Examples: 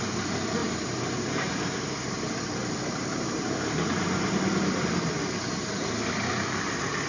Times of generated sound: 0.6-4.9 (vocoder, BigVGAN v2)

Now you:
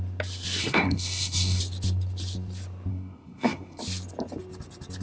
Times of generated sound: 0.6-1.6 (codec, SNAC); 2.9-3.8

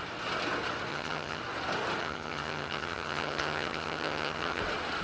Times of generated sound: 0.9-1.4 (vocoder, HiFi-GAN); 2.0-4.6